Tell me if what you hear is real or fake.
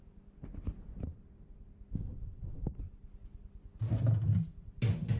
real